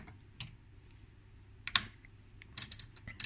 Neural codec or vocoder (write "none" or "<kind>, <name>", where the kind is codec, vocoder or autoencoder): none